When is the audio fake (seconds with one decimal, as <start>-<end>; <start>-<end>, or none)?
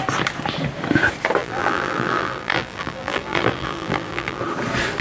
1.4-4.4